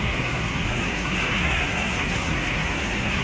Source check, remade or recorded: remade